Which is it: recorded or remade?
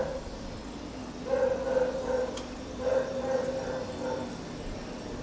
recorded